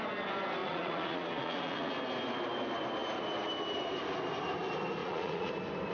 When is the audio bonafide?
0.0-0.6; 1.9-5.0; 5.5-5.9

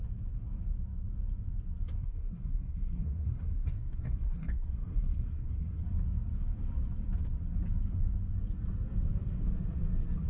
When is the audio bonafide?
0.0-2.0; 5.8-10.3

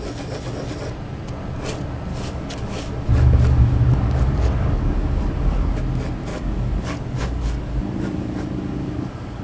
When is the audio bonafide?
0.0-2.1; 5.8-6.3

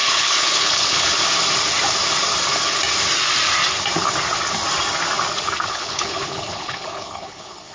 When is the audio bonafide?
1.1-5.7

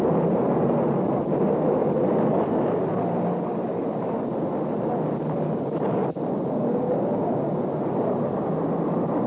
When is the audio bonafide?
0.0-9.3

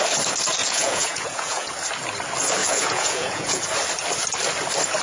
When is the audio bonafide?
0.0-0.6; 1.7-2.6; 3.6-5.0